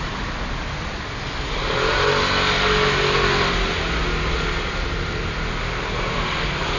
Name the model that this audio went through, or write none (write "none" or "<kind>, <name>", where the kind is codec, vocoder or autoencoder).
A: none